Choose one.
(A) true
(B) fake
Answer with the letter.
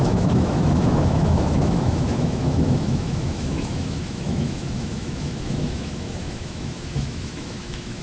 B